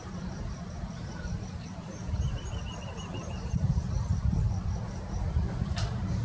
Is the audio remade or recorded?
remade